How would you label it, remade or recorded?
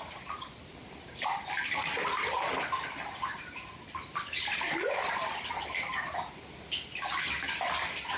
remade